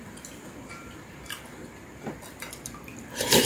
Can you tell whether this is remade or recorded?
remade